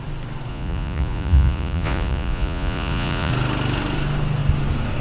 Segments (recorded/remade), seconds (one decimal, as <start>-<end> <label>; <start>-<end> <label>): 0.0-0.5 recorded; 0.5-3.3 remade; 3.3-5.0 recorded